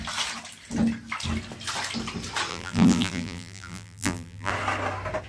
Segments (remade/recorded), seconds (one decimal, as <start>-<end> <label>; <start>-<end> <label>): 0.0-2.5 recorded; 2.5-4.5 remade; 4.5-5.3 recorded